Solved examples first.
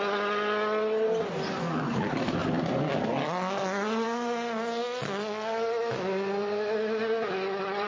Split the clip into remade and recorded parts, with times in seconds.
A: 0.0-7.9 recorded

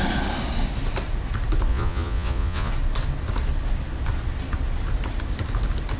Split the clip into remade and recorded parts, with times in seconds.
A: 0.0-1.7 recorded; 1.7-2.7 remade; 2.7-6.0 recorded

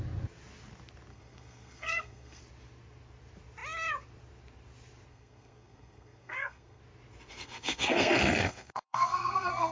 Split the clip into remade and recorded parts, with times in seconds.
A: 0.0-1.1 recorded; 1.1-2.4 remade; 2.4-5.1 recorded; 5.1-6.8 remade; 6.8-7.3 recorded; 7.3-9.7 remade

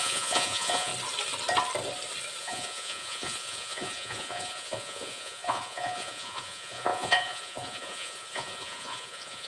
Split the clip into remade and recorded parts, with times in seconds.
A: 0.0-0.9 remade; 0.9-2.4 recorded; 2.4-9.5 remade